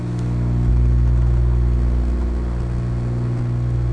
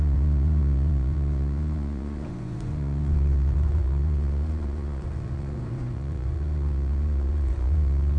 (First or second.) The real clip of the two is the first